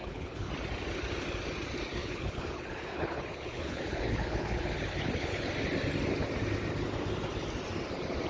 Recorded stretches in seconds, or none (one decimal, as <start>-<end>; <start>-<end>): 0.5-2.0; 5.5-8.3